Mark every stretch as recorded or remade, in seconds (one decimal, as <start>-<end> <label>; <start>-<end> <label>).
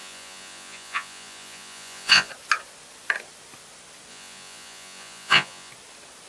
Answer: 0.0-2.3 remade; 2.3-4.1 recorded; 4.1-5.7 remade; 5.7-6.3 recorded